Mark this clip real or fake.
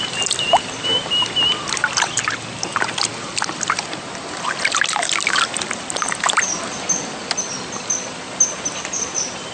real